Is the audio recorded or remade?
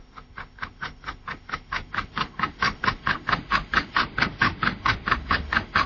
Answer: remade